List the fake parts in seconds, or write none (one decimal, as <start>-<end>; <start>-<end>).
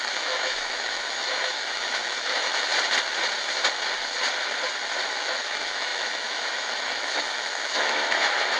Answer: 0.0-2.7; 5.1-8.6